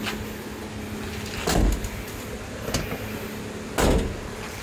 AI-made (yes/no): no